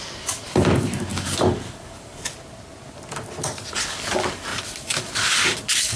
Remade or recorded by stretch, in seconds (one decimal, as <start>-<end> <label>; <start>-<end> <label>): 0.0-2.2 remade; 2.2-3.7 recorded; 3.7-6.0 remade